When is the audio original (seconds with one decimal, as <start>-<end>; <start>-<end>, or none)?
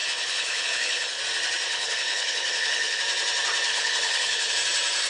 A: 1.2-1.7; 3.0-3.7; 4.5-5.1